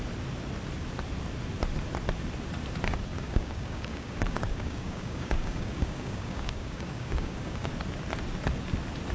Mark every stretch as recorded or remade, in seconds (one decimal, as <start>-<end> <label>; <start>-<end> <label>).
0.0-3.1 recorded; 3.1-7.7 remade; 7.7-9.1 recorded